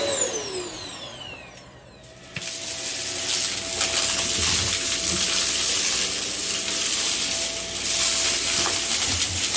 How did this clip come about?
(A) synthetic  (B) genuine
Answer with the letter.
B